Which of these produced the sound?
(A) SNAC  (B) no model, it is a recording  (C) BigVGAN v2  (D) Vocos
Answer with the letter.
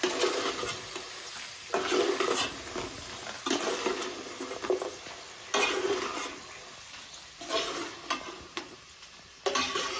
B